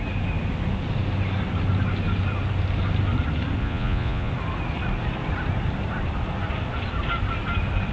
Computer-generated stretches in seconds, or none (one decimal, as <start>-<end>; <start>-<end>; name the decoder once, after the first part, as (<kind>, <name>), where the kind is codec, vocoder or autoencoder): 3.6-4.3 (vocoder, Vocos)